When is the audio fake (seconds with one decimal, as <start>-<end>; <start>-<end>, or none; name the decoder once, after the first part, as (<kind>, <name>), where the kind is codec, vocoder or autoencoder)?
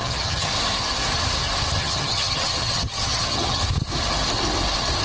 0.0-0.5 (vocoder, HiFi-GAN); 1.8-3.6